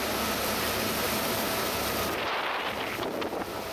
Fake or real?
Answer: real